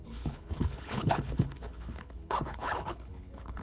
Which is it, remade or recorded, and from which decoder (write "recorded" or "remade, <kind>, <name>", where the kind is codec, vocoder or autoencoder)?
remade, codec, HILCodec